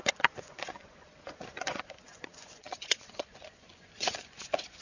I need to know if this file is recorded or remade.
remade